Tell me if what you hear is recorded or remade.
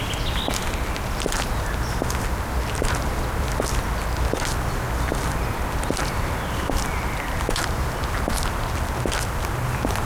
recorded